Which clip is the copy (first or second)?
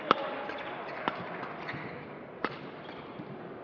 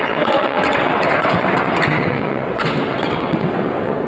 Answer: second